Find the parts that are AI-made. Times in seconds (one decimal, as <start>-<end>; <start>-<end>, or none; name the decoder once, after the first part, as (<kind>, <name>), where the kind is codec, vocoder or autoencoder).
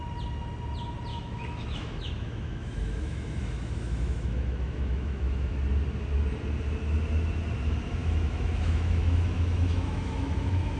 1.1-5.6 (autoencoder, DAC-VAE); 8.0-10.8